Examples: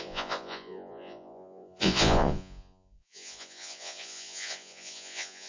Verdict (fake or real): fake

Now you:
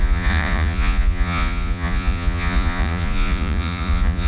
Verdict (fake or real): fake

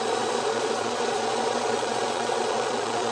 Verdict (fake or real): fake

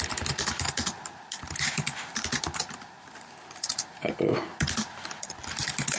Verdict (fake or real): real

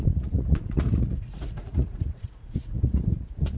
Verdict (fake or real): fake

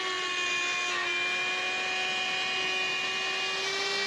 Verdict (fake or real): real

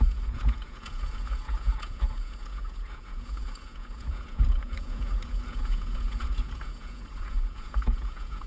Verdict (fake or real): fake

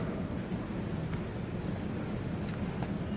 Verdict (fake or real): real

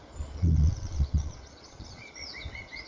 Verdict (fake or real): fake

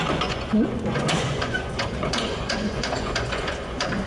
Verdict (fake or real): fake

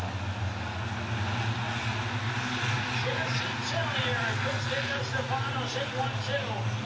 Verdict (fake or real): real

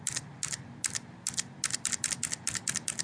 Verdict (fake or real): real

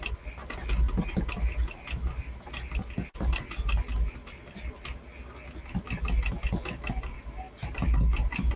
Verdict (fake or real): real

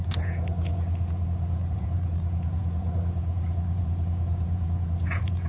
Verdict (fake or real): fake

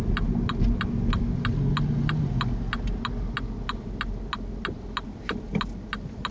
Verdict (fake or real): real